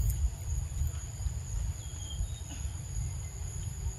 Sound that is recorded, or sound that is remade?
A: recorded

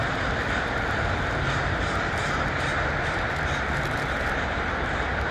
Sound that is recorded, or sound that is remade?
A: remade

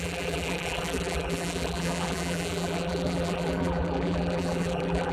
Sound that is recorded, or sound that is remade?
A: remade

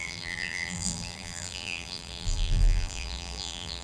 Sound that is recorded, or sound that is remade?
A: remade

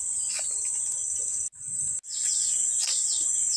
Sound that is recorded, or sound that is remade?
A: recorded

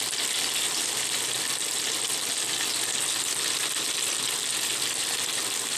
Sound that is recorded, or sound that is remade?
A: recorded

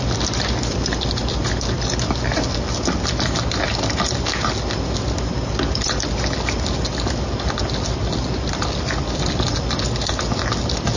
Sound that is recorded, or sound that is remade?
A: recorded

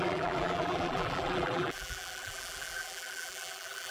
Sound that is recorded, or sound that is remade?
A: remade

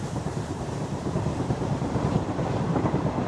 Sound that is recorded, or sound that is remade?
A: remade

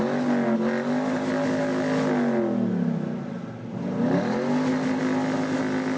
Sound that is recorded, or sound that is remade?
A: recorded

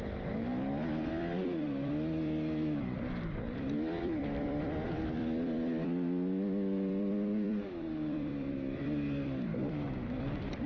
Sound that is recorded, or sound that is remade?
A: remade